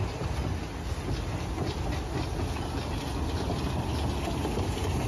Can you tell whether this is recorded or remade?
recorded